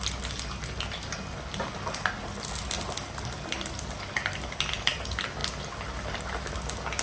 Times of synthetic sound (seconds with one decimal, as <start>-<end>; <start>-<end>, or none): none